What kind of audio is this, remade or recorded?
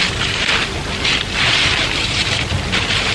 recorded